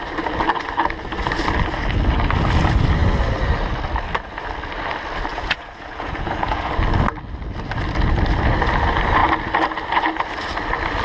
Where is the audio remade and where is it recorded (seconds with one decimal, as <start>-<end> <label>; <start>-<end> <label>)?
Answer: 0.0-5.3 recorded; 5.3-6.7 remade; 6.7-11.0 recorded

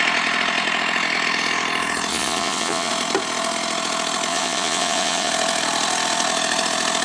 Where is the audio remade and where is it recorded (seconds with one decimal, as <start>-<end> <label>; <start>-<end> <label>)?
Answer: 0.0-2.1 recorded; 2.1-2.9 remade; 2.9-4.3 recorded; 4.3-5.3 remade; 5.3-7.0 recorded

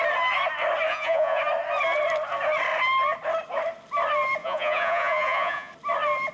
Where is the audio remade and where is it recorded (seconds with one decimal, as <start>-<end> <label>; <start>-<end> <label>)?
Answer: 0.0-0.9 recorded; 0.9-1.4 remade; 1.4-4.4 recorded; 4.4-5.7 remade; 5.7-6.3 recorded

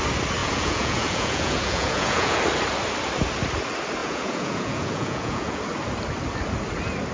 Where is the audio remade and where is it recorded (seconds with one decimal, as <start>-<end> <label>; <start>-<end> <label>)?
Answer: 0.0-0.4 recorded; 0.4-2.4 remade; 2.4-4.0 recorded; 4.0-5.6 remade; 5.6-7.1 recorded

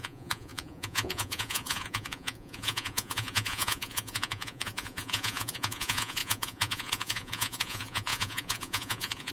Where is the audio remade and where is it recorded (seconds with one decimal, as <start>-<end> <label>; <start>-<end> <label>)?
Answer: 0.0-9.3 remade

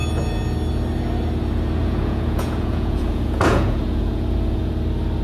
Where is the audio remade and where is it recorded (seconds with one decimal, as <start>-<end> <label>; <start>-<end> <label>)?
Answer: 0.0-1.8 recorded; 1.8-4.7 remade; 4.7-5.2 recorded

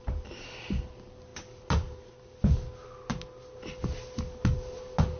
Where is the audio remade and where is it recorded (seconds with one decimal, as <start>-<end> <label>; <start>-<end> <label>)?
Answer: 0.0-5.2 recorded